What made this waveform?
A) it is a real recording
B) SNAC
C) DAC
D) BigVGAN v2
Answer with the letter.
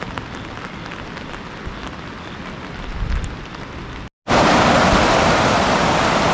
A